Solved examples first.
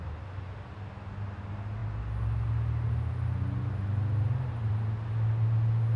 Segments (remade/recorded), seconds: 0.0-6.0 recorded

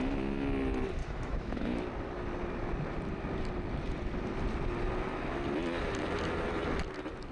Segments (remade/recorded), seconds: 0.0-1.0 recorded; 1.0-1.8 remade; 1.8-7.3 recorded

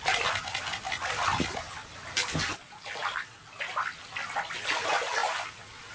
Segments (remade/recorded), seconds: 0.0-5.9 recorded

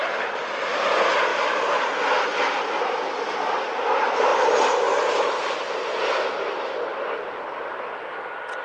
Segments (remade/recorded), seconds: 0.0-1.3 recorded; 1.3-1.9 remade; 1.9-4.3 recorded; 4.3-6.1 remade; 6.1-6.9 recorded; 6.9-7.6 remade; 7.6-8.6 recorded

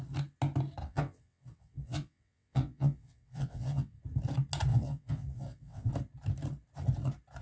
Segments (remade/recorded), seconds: 0.0-0.8 recorded; 0.8-4.0 remade; 4.0-4.7 recorded; 4.7-5.9 remade; 5.9-7.4 recorded

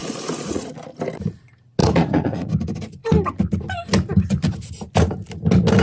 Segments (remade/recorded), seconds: 0.0-0.7 remade; 0.7-1.8 recorded; 1.8-2.5 remade; 2.5-5.8 recorded